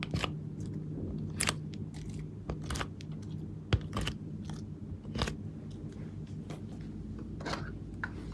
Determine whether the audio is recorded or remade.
recorded